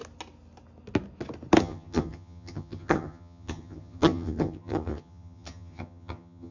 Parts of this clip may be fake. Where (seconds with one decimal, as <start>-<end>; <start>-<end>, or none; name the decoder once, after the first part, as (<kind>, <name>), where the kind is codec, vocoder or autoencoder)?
1.6-6.5 (vocoder, HiFi-GAN)